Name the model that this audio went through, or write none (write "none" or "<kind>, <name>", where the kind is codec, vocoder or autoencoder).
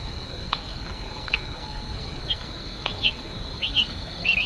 codec, SNAC